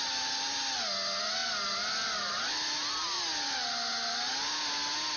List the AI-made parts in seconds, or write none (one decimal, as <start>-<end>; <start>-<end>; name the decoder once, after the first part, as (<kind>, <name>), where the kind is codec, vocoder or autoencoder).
none